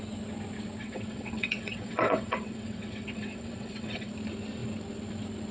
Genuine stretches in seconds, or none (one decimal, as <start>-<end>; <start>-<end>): 0.0-0.8; 4.1-5.5